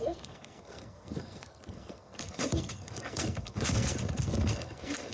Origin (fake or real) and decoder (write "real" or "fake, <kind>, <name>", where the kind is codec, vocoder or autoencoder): fake, codec, SNAC